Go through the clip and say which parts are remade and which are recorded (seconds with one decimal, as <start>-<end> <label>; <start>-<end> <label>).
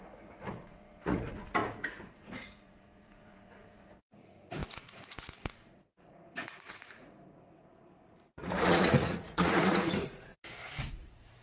0.0-10.3 remade; 10.3-10.9 recorded; 10.9-11.4 remade